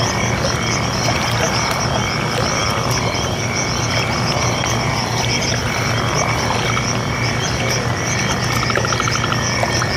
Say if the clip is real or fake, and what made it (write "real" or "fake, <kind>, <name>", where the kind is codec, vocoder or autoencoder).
real